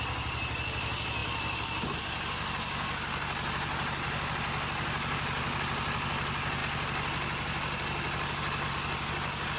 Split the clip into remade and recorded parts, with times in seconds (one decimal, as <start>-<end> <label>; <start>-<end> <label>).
0.0-9.6 recorded